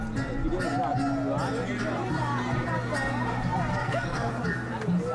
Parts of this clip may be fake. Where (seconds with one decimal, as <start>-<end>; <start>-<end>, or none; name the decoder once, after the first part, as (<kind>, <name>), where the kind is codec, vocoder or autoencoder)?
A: 3.7-4.3 (codec, SNAC)